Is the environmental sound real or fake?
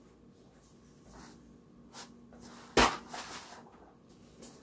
real